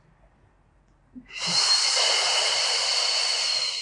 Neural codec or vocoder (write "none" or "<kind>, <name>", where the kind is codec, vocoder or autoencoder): none